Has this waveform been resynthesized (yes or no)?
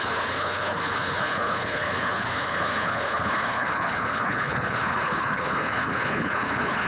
yes